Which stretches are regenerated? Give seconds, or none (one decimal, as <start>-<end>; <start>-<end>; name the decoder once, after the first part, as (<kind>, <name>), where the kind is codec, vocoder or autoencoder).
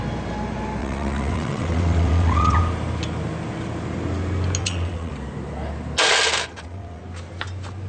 0.8-2.6 (vocoder, WaveNeXt); 4.6-5.1; 6.5-7.0